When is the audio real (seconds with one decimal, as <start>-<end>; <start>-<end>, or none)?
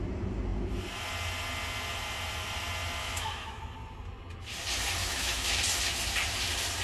0.0-3.0; 3.6-5.0; 5.6-6.8